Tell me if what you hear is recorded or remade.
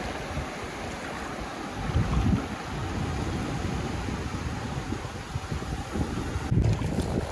recorded